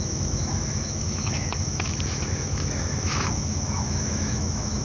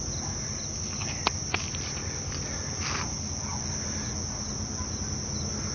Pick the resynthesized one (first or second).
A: first